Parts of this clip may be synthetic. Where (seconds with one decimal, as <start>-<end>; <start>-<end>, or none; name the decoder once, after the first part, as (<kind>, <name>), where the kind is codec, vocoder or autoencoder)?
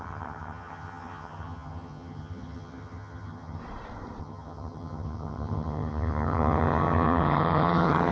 0.0-3.6 (vocoder, HiFi-GAN); 4.2-8.1